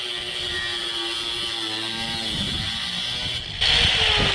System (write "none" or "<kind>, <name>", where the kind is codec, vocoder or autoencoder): none